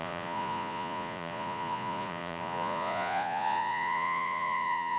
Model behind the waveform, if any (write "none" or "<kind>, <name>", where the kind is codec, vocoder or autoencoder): vocoder, Vocos